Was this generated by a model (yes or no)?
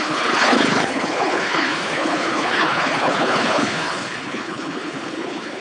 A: yes